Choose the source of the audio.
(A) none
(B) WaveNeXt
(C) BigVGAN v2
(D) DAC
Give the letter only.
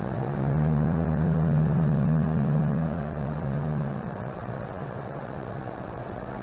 B